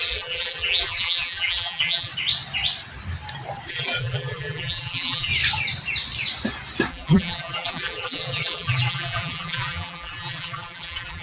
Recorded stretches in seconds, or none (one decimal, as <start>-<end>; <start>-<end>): 2.1-3.7; 5.3-6.9